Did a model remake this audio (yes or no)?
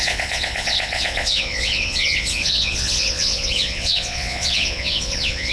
yes